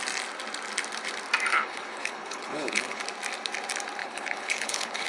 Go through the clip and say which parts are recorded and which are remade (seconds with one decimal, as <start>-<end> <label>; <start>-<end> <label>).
0.0-1.5 recorded; 1.5-3.0 remade; 3.0-4.0 recorded; 4.0-5.1 remade